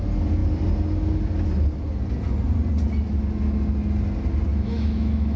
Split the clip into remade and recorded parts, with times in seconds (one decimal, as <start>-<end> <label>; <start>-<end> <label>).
0.0-4.5 recorded; 4.5-5.4 remade